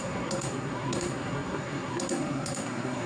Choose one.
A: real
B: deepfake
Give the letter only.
B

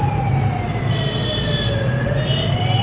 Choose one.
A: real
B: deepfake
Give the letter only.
A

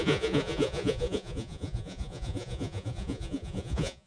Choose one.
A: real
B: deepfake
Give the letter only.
B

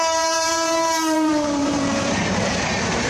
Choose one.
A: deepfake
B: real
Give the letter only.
A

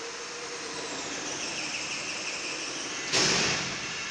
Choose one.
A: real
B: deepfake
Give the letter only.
A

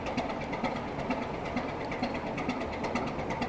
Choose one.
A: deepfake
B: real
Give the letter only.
B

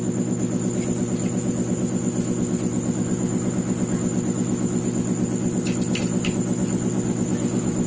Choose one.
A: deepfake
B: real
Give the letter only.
B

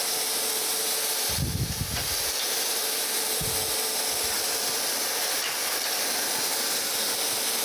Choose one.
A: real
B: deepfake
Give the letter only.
A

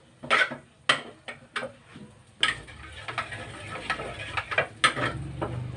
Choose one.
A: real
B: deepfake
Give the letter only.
A